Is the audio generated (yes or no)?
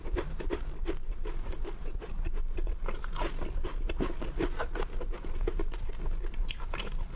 yes